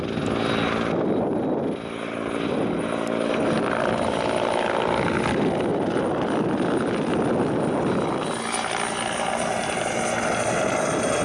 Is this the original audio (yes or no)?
yes